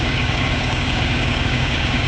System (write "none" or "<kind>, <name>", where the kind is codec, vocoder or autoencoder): codec, DAC